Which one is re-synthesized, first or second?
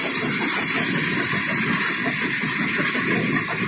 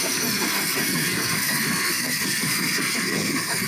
second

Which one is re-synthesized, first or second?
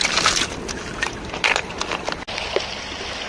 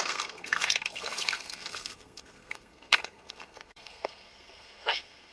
second